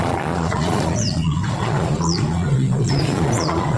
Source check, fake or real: fake